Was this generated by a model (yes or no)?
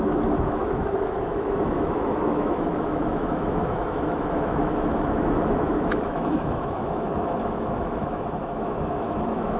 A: yes